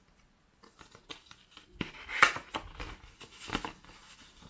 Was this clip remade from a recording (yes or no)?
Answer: no